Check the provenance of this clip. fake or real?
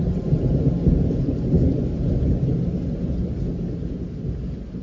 real